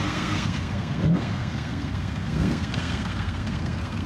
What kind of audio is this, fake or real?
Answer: fake